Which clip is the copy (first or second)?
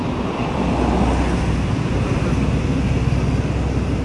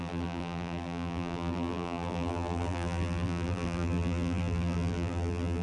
second